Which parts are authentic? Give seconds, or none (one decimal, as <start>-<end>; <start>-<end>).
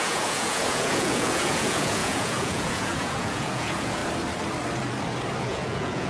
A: 4.0-5.4